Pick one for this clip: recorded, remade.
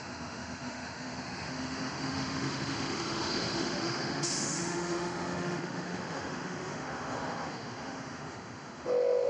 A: remade